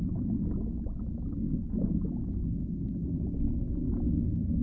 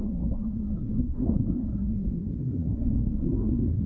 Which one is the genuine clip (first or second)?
first